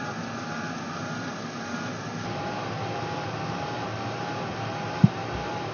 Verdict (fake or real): real